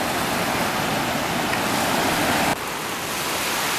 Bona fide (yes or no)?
yes